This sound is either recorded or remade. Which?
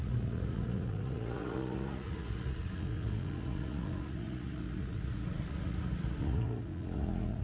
remade